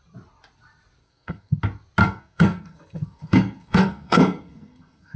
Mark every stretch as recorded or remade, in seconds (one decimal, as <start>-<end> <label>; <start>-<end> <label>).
0.0-1.0 recorded; 1.0-1.6 remade; 1.6-2.0 recorded; 2.0-5.2 remade